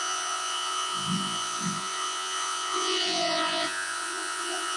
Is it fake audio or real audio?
fake